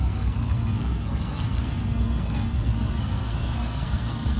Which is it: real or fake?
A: fake